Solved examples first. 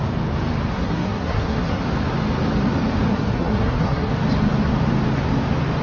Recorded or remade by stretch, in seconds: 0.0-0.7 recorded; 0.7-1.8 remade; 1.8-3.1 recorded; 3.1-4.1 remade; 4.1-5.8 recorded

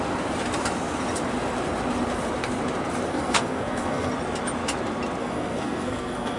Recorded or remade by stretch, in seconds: 0.0-3.1 recorded; 3.1-4.1 remade; 4.1-5.2 recorded; 5.2-6.4 remade

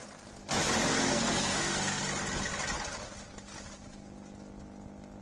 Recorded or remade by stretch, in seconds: 0.0-0.9 recorded; 0.9-2.0 remade; 2.0-5.2 recorded

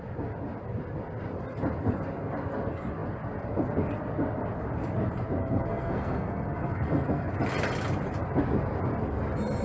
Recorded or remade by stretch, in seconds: 0.0-5.4 recorded; 5.4-7.3 remade; 7.3-9.6 recorded